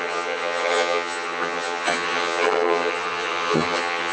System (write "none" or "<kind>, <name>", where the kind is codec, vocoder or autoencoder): vocoder, HiFi-GAN